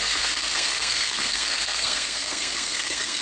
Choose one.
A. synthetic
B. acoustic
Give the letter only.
A